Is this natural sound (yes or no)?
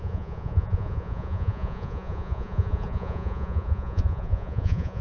no